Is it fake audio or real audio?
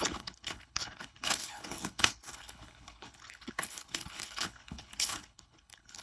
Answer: fake